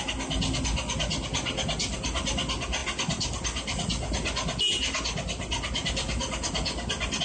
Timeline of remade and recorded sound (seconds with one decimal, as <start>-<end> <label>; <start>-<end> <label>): 0.0-7.2 recorded